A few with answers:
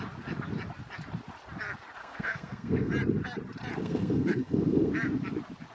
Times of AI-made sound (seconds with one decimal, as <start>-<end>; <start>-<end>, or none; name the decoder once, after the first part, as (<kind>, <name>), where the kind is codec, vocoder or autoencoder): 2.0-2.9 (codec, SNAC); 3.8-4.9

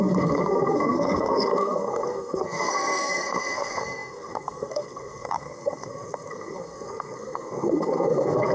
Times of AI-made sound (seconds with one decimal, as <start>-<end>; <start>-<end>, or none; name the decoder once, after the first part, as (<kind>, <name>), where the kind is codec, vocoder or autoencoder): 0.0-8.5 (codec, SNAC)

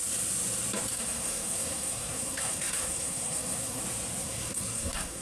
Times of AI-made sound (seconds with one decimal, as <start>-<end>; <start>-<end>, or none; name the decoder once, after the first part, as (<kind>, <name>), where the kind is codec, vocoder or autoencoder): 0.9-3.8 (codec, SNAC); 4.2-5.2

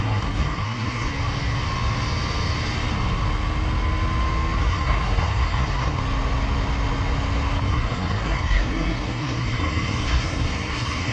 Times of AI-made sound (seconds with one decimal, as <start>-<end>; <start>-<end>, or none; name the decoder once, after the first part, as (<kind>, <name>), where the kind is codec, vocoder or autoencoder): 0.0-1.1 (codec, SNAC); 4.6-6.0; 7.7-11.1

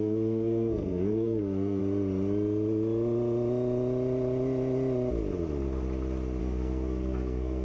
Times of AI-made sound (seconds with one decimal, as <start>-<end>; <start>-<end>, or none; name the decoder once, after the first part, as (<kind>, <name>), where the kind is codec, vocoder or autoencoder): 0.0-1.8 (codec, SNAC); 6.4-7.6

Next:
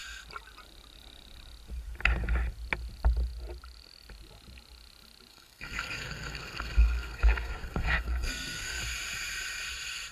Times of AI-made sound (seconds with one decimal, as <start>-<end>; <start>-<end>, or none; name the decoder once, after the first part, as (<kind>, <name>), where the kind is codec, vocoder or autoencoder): 5.3-8.8 (codec, SNAC)

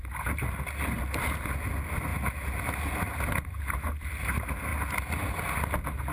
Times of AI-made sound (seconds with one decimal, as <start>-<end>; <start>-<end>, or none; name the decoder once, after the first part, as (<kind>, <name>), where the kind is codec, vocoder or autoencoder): none